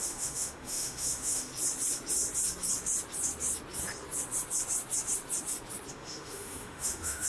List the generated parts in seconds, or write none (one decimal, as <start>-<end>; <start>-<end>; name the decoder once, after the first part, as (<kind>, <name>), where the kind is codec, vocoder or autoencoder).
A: 0.0-1.5 (autoencoder, DAC-VAE); 5.9-7.3